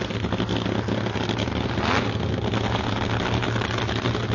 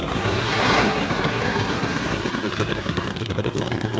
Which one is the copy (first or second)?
second